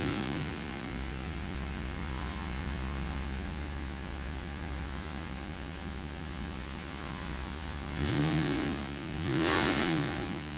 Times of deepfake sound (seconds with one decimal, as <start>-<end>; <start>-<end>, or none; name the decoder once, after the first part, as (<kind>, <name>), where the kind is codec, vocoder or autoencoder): 0.0-10.6 (vocoder, Vocos)